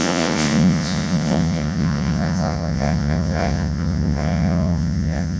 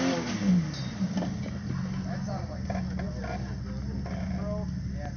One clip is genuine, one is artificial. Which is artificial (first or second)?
first